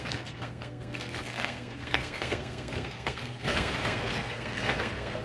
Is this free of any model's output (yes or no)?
no